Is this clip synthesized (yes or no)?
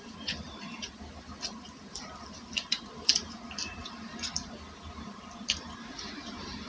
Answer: yes